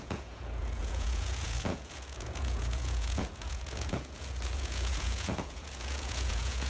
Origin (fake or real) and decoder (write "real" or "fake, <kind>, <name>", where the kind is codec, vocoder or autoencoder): fake, vocoder, Vocos